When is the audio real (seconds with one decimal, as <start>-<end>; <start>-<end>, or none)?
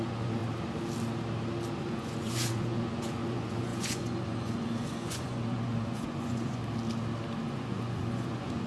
0.4-1.8; 6.6-7.5